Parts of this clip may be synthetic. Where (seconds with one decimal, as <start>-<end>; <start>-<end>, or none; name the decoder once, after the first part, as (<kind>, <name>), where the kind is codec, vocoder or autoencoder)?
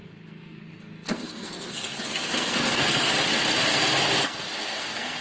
0.0-3.1 (codec, SNAC); 3.7-5.2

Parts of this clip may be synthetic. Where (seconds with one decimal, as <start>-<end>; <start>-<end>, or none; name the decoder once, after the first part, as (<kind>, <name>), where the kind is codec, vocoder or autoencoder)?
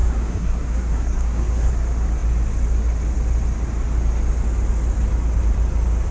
0.0-1.7 (codec, SNAC)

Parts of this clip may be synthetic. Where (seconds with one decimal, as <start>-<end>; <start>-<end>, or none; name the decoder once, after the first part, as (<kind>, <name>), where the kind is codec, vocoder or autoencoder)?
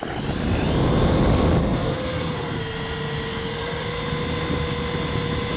1.6-2.6 (codec, SNAC); 3.3-3.9